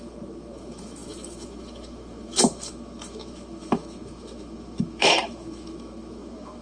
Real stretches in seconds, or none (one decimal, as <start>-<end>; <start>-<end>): none

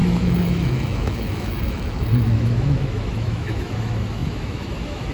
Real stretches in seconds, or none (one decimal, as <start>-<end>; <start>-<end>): none